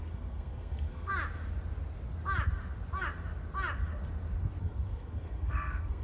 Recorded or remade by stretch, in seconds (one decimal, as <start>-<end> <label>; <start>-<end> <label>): 0.0-1.1 remade; 1.1-4.6 recorded; 4.6-6.0 remade